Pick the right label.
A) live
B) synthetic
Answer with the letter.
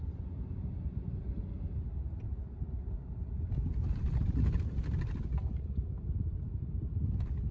A